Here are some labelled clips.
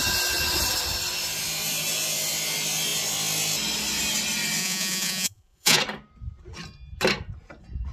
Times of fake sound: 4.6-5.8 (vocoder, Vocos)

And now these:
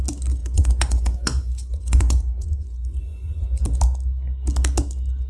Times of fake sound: 0.4-3.6 (vocoder, Vocos)